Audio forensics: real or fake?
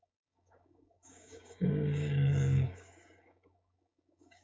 fake